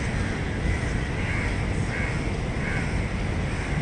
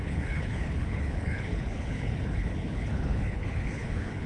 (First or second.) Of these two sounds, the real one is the first